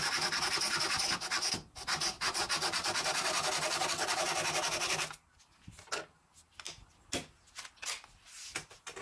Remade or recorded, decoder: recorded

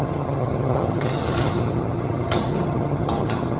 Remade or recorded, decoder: remade, vocoder, HiFi-GAN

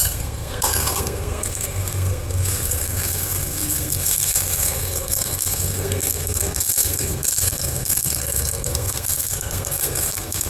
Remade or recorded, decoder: remade, codec, SNAC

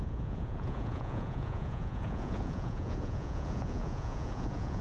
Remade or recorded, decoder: remade, vocoder, Vocos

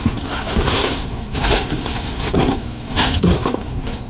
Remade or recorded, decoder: remade, codec, SNAC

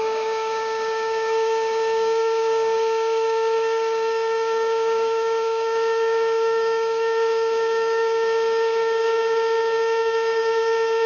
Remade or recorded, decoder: remade, codec, DAC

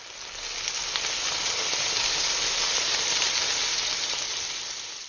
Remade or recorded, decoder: recorded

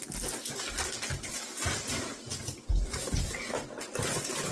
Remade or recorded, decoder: recorded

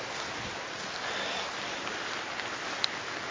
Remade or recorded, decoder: recorded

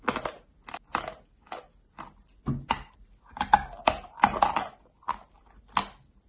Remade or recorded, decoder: recorded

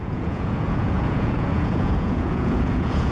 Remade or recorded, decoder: remade, vocoder, Vocos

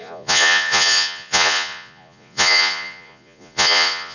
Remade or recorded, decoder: remade, vocoder, Vocos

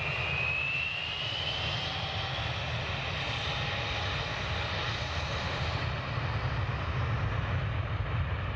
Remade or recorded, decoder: recorded